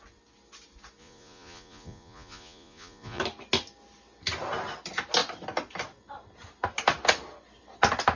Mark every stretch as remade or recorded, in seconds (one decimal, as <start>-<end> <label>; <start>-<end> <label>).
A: 0.0-1.0 recorded; 1.0-3.2 remade; 3.2-8.2 recorded